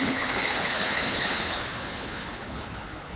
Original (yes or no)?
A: no